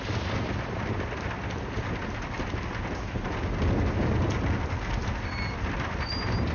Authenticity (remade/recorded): recorded